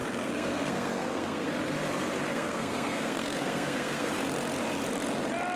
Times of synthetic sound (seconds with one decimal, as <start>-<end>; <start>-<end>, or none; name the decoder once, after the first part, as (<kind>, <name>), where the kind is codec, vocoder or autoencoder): 0.0-1.5 (codec, SNAC); 2.3-4.1

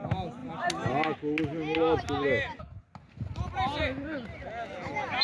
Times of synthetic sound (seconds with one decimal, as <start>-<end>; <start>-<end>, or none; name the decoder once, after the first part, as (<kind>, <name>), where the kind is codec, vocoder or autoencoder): none

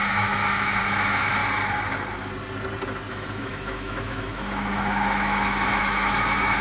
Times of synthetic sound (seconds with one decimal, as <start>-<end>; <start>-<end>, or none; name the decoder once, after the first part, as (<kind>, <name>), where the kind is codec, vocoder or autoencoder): 0.0-1.4 (autoencoder, DAC-VAE); 3.1-6.6

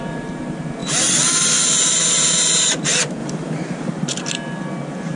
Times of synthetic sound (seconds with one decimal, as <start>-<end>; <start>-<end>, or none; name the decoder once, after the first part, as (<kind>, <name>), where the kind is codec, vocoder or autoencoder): 0.8-1.4 (vocoder, BigVGAN v2); 3.2-3.9

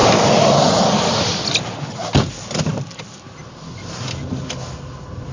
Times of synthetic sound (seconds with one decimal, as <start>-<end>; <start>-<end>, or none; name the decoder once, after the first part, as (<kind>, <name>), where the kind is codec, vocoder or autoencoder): 2.7-4.4 (vocoder, BigVGAN v2)

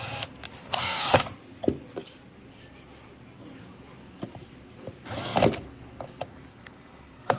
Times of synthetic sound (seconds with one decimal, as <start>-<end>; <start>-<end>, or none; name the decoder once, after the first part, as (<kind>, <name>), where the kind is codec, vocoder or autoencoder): 0.6-1.2 (codec, SNAC); 6.5-7.4

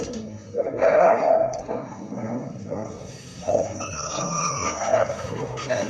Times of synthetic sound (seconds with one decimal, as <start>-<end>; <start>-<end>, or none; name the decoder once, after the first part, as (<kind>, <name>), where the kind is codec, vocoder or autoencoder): 0.0-5.9 (codec, SNAC)

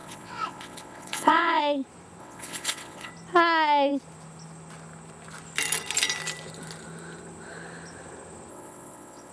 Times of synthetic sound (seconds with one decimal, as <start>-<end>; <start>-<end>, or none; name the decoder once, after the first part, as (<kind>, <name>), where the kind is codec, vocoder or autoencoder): 0.0-1.6 (vocoder, WaveNeXt); 2.2-3.1; 8.5-9.3